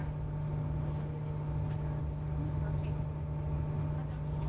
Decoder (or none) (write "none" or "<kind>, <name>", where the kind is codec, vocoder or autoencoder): none